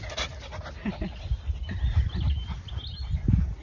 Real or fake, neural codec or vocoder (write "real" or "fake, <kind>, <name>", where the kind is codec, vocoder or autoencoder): real